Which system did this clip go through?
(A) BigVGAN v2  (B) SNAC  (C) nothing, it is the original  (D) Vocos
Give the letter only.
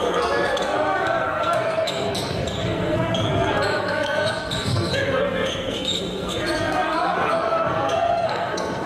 B